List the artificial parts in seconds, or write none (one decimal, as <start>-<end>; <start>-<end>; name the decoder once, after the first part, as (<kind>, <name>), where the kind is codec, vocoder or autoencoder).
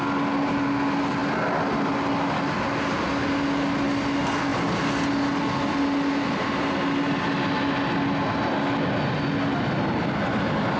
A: none